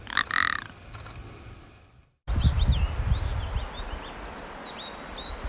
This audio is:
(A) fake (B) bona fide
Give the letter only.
B